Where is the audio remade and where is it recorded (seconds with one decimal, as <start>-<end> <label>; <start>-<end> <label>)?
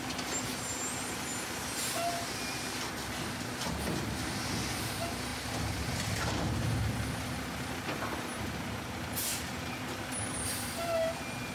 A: 0.0-11.5 recorded